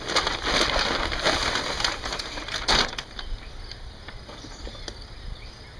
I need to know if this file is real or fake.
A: real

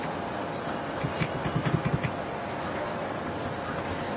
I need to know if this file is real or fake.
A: real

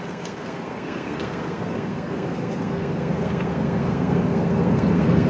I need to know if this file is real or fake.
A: fake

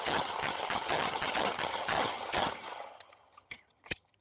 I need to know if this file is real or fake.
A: fake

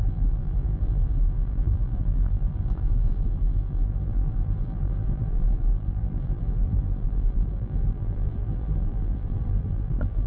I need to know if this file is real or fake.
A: fake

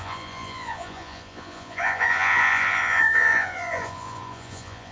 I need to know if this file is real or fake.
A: fake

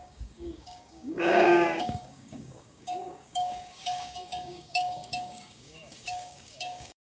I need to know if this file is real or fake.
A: fake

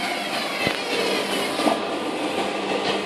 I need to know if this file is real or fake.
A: real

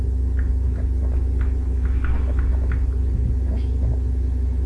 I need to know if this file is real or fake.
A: real